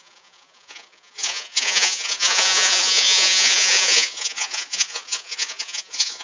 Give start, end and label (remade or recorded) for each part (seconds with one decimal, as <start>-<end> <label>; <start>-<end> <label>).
0.0-6.2 remade